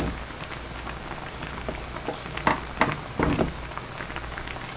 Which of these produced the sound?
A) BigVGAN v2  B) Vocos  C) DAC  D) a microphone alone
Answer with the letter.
D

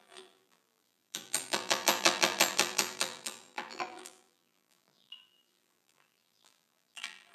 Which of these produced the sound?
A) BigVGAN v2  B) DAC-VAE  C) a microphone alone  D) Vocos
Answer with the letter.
A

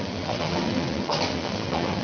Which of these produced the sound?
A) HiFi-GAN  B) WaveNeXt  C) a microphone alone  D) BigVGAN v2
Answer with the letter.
B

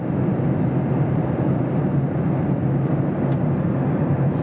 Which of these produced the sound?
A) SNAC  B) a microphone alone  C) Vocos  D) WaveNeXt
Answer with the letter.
B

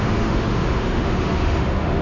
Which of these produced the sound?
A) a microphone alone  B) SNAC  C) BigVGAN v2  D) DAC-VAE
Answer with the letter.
D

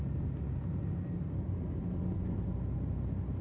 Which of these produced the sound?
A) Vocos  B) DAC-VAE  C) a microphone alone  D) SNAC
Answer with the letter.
C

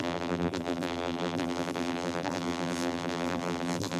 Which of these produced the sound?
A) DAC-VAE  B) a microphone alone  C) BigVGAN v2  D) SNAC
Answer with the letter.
C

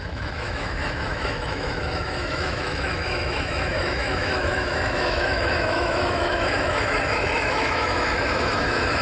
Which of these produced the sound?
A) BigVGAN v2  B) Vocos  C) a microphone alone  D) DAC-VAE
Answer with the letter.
D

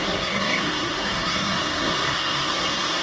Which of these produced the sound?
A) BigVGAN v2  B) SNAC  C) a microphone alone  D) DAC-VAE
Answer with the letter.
B